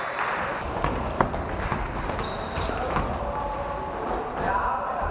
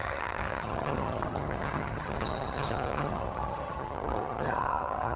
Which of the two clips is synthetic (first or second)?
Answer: second